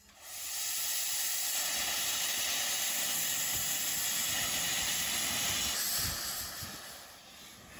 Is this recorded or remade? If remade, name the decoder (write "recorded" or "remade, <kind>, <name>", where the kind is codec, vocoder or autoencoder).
recorded